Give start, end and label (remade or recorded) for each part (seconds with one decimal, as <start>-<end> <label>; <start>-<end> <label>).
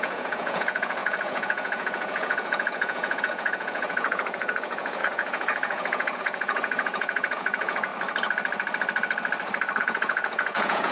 0.0-7.9 remade; 7.9-9.8 recorded; 9.8-10.9 remade